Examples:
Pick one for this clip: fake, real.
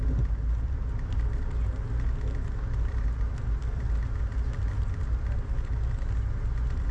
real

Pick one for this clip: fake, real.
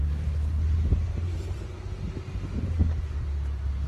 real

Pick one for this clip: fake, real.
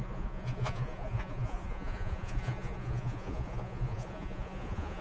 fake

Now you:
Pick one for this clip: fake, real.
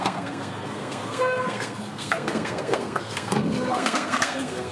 fake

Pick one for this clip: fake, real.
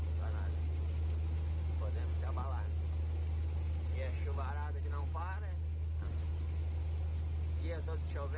real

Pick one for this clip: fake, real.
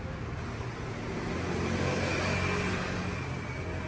real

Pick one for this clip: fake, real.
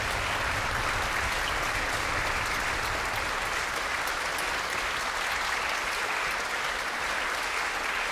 real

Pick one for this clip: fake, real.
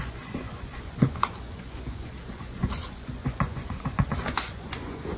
fake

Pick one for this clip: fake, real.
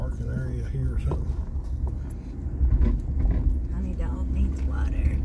real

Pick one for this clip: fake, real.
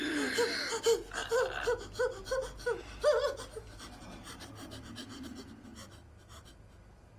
real